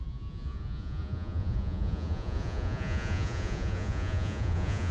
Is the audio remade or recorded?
remade